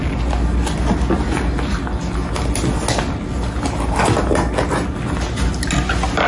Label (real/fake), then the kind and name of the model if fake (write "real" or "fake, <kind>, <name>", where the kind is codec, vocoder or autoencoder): real